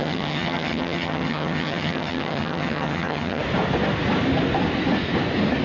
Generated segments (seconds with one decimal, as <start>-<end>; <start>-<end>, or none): 0.0-3.4